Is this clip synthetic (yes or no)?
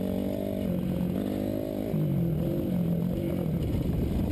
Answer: no